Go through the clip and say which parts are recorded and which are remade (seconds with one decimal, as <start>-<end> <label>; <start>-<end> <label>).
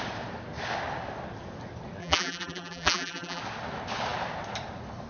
0.0-2.0 recorded; 2.0-3.4 remade; 3.4-5.1 recorded